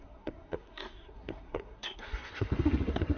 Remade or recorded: remade